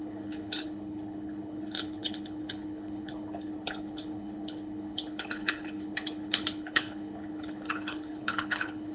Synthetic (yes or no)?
yes